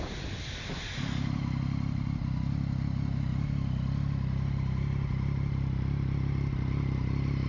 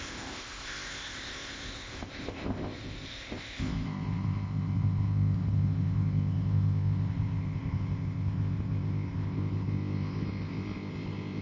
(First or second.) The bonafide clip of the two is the first